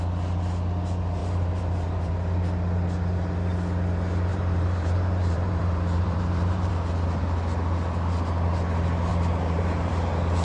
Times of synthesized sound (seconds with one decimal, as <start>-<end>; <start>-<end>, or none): 1.2-2.1; 4.3-6.7; 9.1-9.9